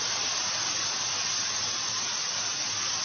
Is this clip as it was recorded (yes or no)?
yes